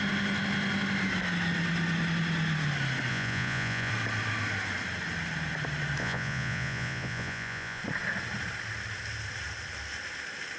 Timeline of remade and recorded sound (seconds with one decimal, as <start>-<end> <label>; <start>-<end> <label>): 0.0-3.1 recorded; 3.1-3.9 remade; 3.9-6.0 recorded; 6.0-7.8 remade; 7.8-10.6 recorded